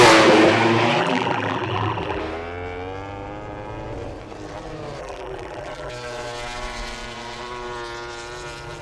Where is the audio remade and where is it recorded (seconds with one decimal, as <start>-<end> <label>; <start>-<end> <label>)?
0.0-1.0 recorded; 1.0-2.2 remade; 2.2-5.0 recorded; 5.0-5.9 remade; 5.9-8.8 recorded